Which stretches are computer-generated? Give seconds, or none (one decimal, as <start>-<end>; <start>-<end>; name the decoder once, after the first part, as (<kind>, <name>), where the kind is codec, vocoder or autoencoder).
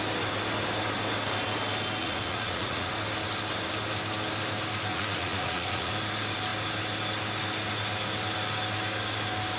2.0-2.9 (vocoder, Vocos); 4.9-5.9